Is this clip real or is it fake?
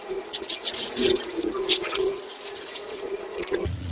fake